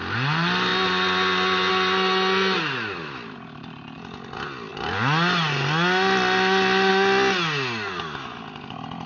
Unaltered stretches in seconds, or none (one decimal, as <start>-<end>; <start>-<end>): 0.0-9.1